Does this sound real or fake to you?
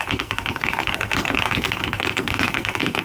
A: fake